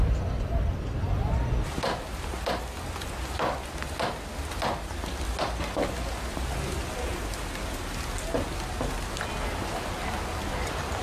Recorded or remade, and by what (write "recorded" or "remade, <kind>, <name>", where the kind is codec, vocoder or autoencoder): recorded